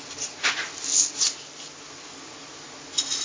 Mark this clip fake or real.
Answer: real